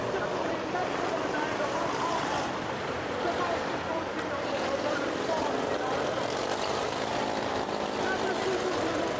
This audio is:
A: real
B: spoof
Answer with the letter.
B